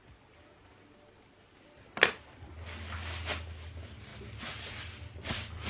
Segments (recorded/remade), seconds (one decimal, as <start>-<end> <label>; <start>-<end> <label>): 0.0-5.7 recorded